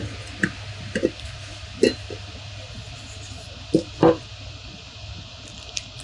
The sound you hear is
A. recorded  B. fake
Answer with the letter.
A